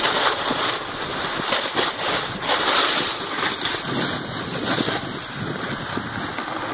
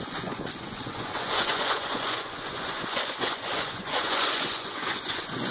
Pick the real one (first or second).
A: first